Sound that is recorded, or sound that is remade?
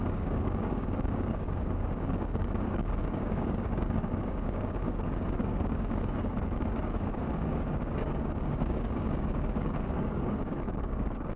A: remade